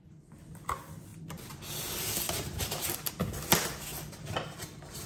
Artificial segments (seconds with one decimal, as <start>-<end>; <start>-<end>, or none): none